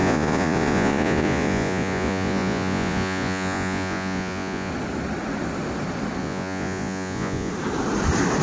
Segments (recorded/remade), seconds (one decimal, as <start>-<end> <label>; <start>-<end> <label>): 0.0-4.7 remade; 4.7-6.2 recorded; 6.2-7.5 remade; 7.5-8.4 recorded